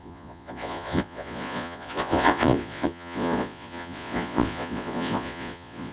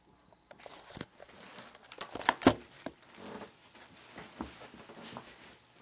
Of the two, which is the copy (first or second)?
first